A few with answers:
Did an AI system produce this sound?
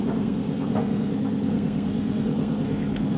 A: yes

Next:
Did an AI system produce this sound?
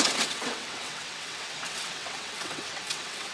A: yes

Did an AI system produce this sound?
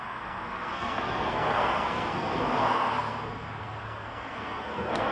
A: yes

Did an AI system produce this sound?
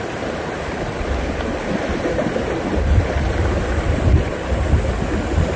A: no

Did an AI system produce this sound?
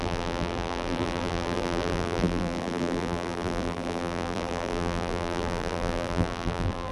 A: yes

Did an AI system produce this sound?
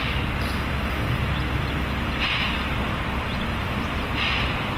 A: no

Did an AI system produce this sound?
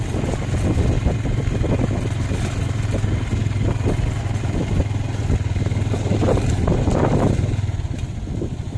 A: no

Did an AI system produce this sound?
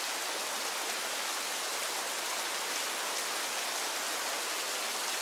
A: no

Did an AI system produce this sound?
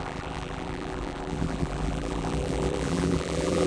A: yes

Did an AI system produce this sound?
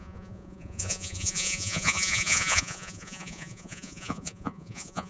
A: yes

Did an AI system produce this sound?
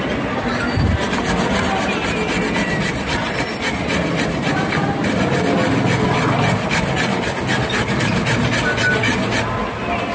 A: no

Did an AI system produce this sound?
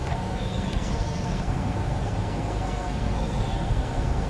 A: yes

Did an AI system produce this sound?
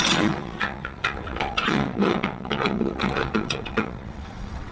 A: yes